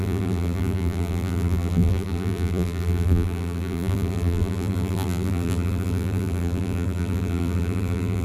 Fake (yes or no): yes